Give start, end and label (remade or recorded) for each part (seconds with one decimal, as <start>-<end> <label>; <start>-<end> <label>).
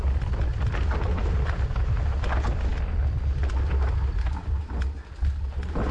0.0-5.9 recorded